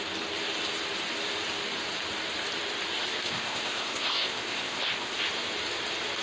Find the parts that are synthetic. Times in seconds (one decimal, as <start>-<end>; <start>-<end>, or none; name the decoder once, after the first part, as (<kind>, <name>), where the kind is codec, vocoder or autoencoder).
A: 3.0-5.2 (codec, ZipCodec)